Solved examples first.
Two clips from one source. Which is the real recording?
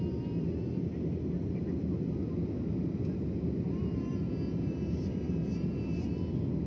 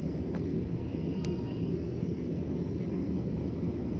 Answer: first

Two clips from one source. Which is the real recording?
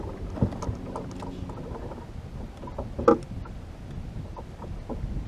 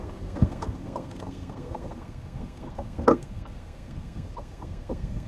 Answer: first